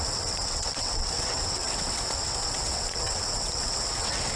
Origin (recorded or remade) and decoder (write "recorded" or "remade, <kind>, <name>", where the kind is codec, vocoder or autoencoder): remade, vocoder, WaveNeXt